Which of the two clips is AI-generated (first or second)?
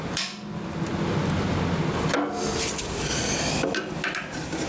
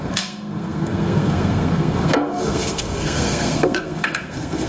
second